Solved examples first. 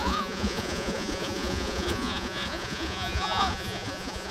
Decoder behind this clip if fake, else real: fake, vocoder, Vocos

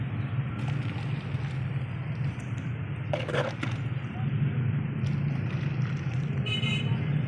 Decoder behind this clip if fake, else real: fake, vocoder, BigVGAN v2